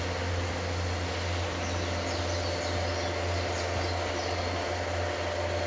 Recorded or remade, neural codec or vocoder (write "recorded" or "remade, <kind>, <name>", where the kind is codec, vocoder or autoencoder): recorded